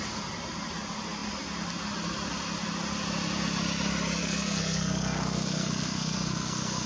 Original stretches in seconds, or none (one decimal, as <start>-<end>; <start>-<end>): 0.0-4.2